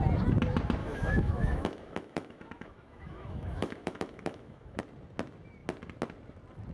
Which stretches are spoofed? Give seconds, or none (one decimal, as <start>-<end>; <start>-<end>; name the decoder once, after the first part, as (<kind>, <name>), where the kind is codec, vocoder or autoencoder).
0.8-4.8 (autoencoder, DAC-VAE)